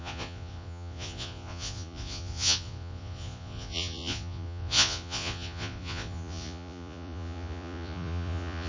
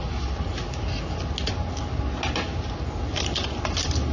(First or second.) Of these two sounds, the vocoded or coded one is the first